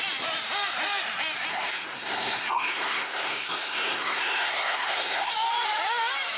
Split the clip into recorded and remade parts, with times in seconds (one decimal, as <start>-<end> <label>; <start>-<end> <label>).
0.0-1.5 recorded; 1.5-5.3 remade; 5.3-6.4 recorded